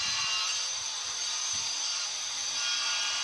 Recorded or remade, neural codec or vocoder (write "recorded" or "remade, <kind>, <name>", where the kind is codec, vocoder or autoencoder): recorded